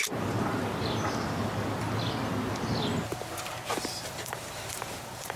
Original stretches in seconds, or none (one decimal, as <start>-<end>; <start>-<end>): 0.0-3.7